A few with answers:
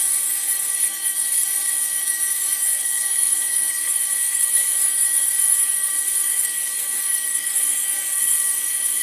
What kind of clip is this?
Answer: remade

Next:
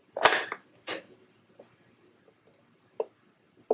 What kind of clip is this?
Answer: recorded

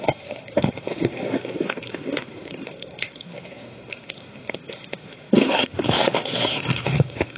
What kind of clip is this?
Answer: remade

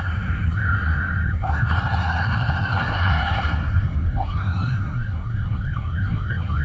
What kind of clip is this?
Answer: remade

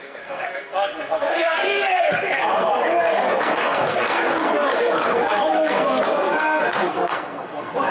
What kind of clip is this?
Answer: remade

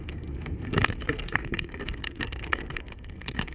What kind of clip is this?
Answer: remade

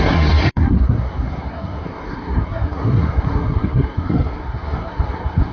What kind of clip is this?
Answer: remade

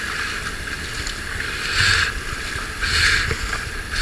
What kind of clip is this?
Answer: recorded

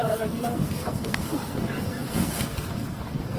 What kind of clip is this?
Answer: remade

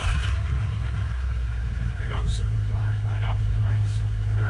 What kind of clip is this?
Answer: remade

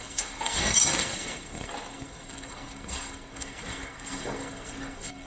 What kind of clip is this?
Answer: remade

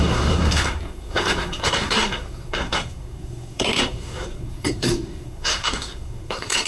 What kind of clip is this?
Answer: remade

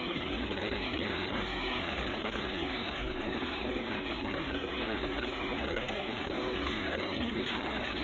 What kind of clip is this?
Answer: remade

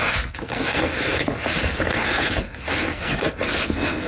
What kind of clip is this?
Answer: remade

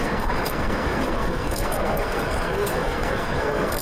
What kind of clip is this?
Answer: remade